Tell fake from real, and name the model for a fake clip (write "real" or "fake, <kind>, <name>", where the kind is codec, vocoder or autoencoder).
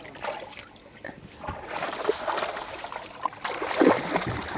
real